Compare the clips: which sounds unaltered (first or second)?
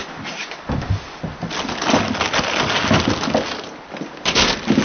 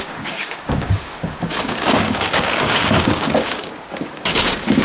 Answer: first